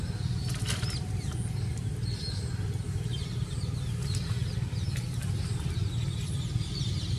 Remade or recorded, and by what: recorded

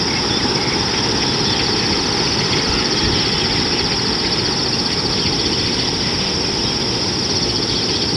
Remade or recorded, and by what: recorded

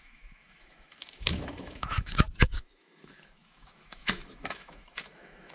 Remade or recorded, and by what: remade, autoencoder, DAC-VAE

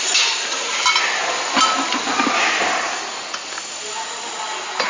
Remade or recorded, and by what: recorded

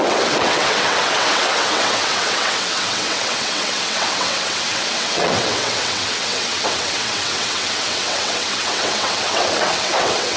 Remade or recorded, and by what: remade, vocoder, WaveNeXt